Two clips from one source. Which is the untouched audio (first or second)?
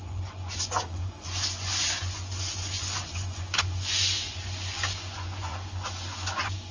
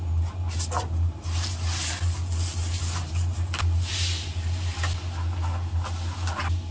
second